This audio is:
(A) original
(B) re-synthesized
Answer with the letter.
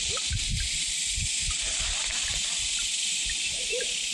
A